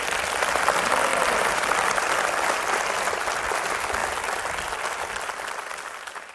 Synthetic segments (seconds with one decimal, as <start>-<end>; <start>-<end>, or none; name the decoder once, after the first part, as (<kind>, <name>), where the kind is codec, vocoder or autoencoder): 0.0-6.3 (vocoder, BigVGAN v2)